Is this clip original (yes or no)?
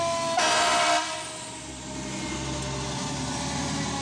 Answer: yes